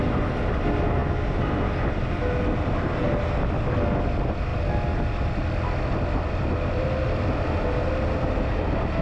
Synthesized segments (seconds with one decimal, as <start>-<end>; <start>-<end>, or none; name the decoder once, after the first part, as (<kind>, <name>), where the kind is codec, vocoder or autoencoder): none